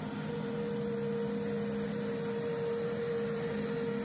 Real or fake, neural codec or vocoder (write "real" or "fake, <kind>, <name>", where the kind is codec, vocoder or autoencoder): real